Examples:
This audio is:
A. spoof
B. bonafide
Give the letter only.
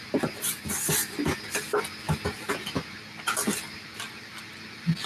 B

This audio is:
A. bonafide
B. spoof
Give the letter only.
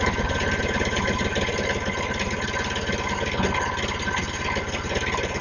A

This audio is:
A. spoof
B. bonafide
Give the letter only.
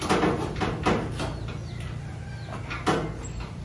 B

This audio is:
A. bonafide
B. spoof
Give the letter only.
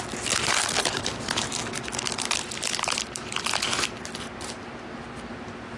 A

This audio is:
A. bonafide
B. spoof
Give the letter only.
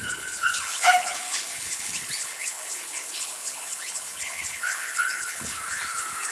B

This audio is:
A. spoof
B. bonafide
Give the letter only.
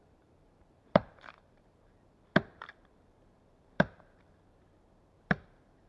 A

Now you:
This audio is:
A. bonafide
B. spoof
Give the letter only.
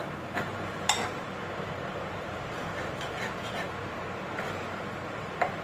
B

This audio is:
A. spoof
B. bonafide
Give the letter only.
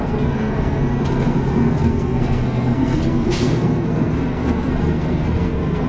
A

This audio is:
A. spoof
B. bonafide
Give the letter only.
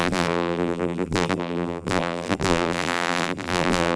A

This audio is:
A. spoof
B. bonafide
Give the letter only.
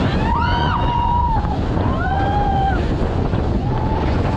A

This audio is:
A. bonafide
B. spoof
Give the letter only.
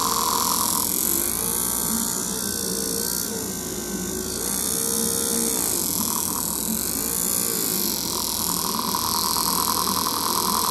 A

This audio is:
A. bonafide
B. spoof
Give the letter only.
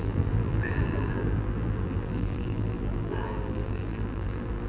B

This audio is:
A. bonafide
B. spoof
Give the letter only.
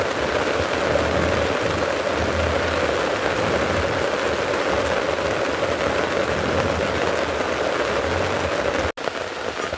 A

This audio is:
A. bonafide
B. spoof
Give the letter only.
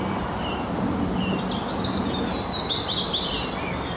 A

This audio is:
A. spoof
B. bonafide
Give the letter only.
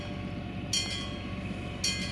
B